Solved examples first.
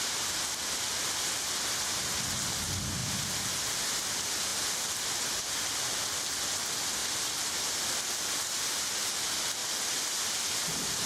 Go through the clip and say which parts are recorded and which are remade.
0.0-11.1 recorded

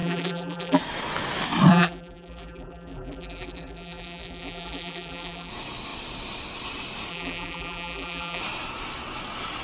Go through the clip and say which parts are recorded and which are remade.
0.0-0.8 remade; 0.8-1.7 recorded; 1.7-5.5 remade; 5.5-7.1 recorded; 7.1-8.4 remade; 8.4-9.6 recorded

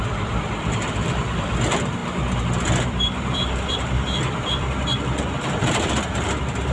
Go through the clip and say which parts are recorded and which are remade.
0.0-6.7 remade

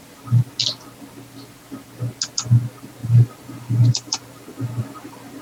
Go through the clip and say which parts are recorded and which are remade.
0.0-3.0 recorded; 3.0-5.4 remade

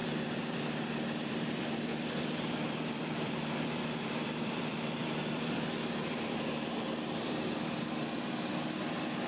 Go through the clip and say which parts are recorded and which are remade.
0.0-9.3 remade

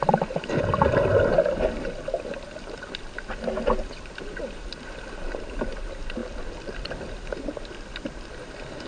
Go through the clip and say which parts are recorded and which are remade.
0.0-8.9 recorded

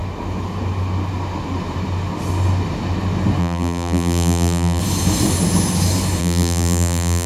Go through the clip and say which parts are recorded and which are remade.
0.0-3.4 recorded; 3.4-4.8 remade; 4.8-6.2 recorded; 6.2-7.3 remade

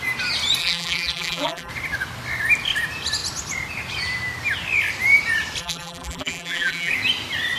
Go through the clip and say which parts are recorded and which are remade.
0.0-0.6 recorded; 0.6-1.7 remade; 1.7-5.6 recorded; 5.6-6.9 remade; 6.9-7.6 recorded